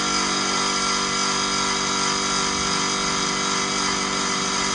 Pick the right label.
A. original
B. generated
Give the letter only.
A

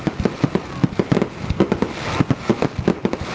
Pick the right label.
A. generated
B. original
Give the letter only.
B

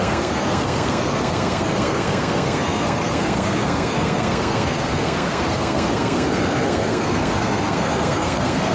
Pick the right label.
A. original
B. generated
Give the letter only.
B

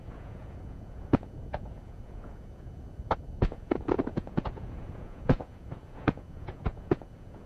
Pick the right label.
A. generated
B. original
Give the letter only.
A